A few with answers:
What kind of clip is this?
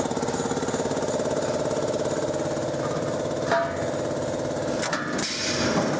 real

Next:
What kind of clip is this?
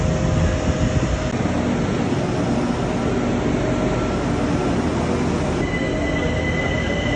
real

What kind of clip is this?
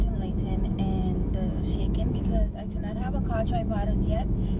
fake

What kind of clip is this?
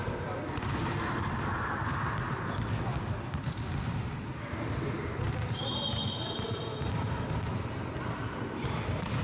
real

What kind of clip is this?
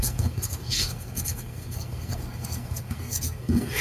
fake